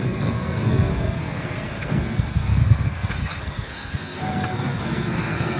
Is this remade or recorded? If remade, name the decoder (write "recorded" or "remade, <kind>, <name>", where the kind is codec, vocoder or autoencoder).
remade, codec, SNAC